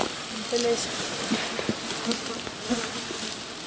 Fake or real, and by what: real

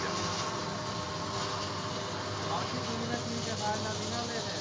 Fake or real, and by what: real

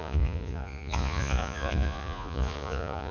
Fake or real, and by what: fake, vocoder, Vocos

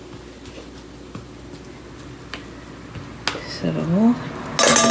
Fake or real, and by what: real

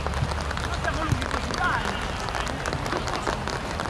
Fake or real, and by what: real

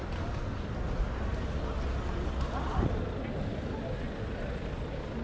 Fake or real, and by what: real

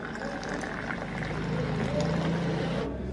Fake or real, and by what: real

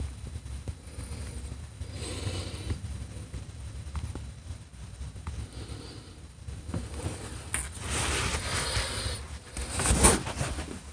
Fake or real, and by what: real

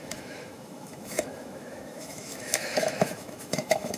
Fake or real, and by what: fake, autoencoder, DAC-VAE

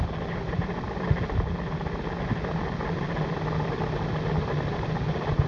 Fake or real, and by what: real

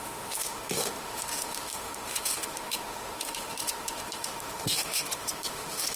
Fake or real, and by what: fake, autoencoder, DAC-VAE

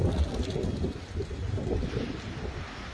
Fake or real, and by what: real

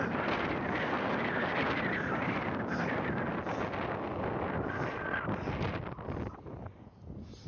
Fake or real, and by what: real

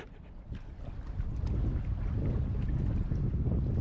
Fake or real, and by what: real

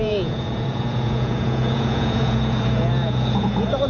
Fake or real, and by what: fake, vocoder, Vocos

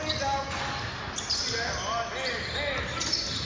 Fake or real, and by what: real